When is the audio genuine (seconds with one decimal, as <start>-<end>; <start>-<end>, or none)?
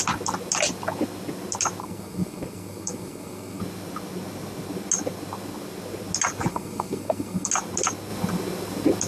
0.0-1.8; 3.6-6.5; 7.5-9.1